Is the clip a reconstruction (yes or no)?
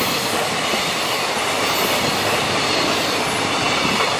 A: no